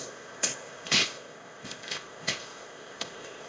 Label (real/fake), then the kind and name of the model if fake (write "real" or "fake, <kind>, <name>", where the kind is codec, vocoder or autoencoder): fake, codec, ZipCodec